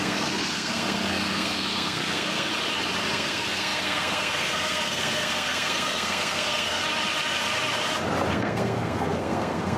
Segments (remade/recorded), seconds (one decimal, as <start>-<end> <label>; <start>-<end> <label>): 0.0-2.5 remade; 2.5-3.1 recorded; 3.1-6.8 remade; 6.8-8.3 recorded; 8.3-9.8 remade